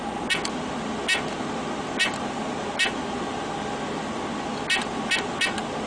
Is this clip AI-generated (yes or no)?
no